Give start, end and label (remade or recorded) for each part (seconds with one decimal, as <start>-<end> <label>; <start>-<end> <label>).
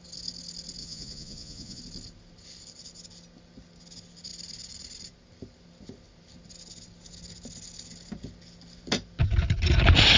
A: 0.0-0.8 recorded; 0.8-1.8 remade; 1.8-10.2 recorded